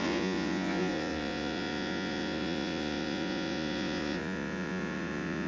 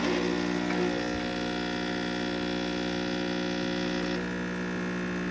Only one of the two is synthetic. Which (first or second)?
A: first